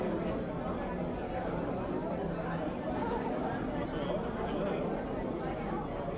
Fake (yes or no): no